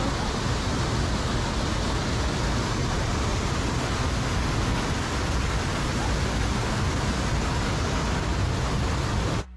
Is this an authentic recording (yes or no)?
yes